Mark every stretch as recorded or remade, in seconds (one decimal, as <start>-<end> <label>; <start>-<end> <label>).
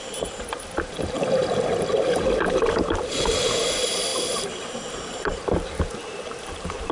0.0-1.4 remade; 1.4-2.1 recorded; 2.1-4.1 remade; 4.1-4.7 recorded; 4.7-6.9 remade